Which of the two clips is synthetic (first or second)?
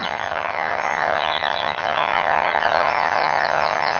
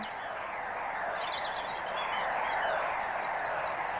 first